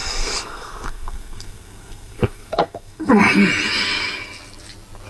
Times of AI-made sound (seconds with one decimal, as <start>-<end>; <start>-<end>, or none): 0.0-3.1